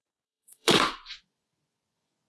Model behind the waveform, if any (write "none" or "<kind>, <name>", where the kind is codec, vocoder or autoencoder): vocoder, Vocos